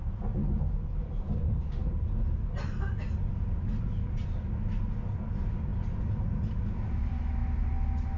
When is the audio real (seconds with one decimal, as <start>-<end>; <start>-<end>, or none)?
0.0-8.2